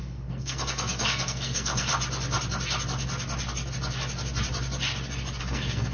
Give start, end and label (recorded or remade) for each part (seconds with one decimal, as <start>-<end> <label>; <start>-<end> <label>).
0.0-1.9 remade; 1.9-5.4 recorded; 5.4-5.9 remade